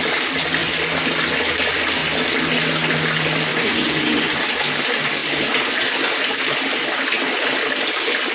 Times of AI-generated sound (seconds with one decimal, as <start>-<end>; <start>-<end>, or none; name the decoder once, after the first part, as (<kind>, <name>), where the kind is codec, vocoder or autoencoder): 3.5-4.4 (vocoder, Vocos)